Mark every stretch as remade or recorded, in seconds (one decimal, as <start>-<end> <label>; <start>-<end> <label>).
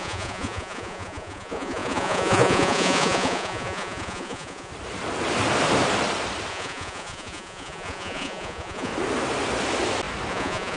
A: 0.0-4.7 remade; 4.7-6.5 recorded; 6.5-8.9 remade; 8.9-10.3 recorded; 10.3-10.8 remade